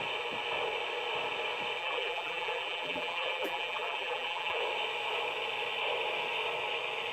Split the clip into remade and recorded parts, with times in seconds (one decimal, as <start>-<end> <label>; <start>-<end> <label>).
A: 0.0-1.8 recorded; 1.8-4.6 remade; 4.6-7.1 recorded